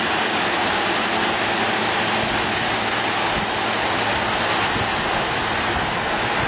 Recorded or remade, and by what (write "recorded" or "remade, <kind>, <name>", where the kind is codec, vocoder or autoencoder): recorded